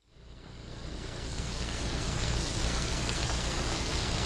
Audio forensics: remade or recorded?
remade